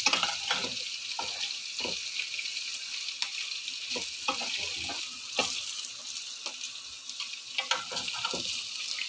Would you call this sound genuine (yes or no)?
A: yes